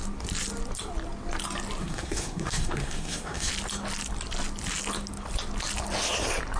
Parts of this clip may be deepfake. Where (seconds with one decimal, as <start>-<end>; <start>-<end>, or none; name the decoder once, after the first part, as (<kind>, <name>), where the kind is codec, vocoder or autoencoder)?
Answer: 1.8-3.5 (codec, SNAC)